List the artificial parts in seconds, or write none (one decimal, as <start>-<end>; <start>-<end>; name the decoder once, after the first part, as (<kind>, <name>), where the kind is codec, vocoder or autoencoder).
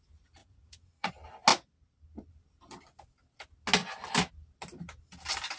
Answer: 0.4-1.1 (vocoder, Vocos)